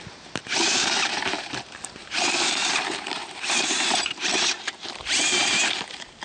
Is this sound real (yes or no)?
no